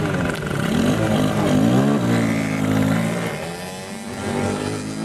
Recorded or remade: recorded